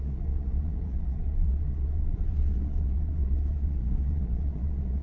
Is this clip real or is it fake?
fake